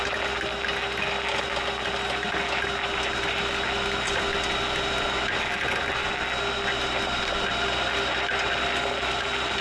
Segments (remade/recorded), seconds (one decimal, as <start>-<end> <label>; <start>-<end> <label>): 0.0-9.6 recorded